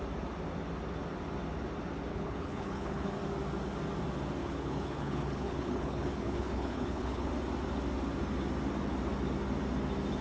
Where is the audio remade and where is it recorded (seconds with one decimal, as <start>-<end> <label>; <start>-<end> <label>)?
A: 0.0-2.1 recorded; 2.1-3.1 remade; 3.1-4.4 recorded; 4.4-7.3 remade; 7.3-10.2 recorded